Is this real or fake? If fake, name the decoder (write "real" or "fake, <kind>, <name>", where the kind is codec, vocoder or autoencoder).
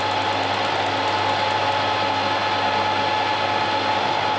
real